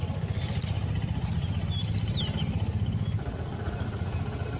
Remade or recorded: recorded